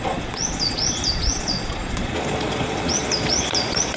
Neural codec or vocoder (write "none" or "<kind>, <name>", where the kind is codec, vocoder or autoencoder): vocoder, Vocos